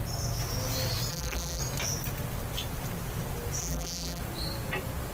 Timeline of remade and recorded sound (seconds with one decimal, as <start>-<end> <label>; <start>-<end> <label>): 0.0-1.1 recorded; 1.1-1.6 remade; 1.6-3.6 recorded; 3.6-4.2 remade; 4.2-5.1 recorded